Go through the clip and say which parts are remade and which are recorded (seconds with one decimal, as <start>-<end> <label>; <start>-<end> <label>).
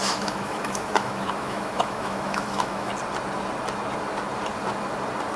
0.0-2.9 remade; 2.9-5.4 recorded